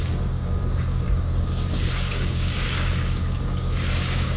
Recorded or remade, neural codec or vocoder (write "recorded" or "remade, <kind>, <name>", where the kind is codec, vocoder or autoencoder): remade, codec, DAC